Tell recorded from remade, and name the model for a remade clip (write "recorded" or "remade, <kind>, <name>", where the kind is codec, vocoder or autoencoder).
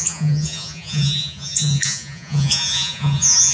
remade, vocoder, Vocos